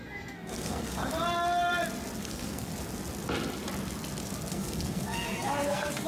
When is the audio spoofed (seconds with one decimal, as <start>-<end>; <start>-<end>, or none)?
0.0-1.1; 2.2-2.7; 4.5-6.1